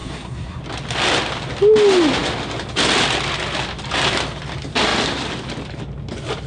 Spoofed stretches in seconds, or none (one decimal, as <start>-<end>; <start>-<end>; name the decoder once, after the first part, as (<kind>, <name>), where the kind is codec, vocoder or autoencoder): 0.0-0.6 (codec, SNAC)